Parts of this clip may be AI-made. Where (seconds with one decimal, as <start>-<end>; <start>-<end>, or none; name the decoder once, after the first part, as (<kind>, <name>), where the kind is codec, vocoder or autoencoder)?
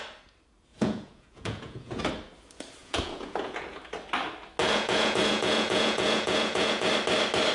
0.7-2.0 (vocoder, Vocos); 2.8-3.8; 4.6-6.9